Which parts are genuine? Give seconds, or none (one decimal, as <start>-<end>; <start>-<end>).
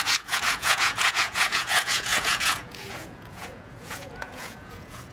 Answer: none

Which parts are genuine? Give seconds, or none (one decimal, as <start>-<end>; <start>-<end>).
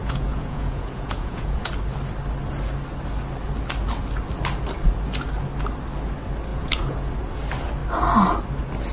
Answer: 1.7-6.5; 7.1-8.9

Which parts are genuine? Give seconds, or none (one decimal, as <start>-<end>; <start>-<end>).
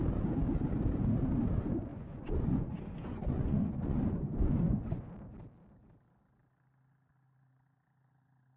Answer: 0.0-1.9; 5.1-8.6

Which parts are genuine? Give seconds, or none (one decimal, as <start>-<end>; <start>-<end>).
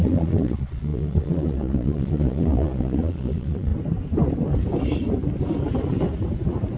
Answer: 3.7-6.8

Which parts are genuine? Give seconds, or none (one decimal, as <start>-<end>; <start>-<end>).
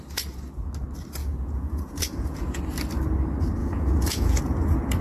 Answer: 0.0-1.2; 2.6-3.6; 4.4-5.0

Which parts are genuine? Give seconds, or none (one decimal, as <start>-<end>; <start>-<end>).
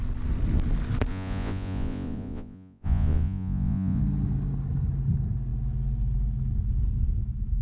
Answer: 0.0-1.1; 4.0-7.6